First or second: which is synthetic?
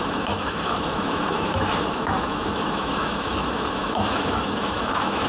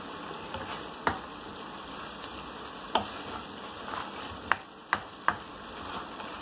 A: first